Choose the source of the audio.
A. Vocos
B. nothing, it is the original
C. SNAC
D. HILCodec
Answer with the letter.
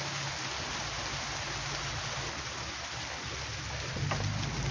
B